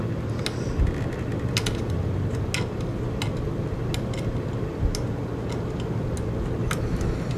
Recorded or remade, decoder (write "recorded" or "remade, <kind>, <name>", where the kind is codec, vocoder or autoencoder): recorded